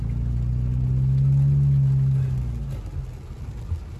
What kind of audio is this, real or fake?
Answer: real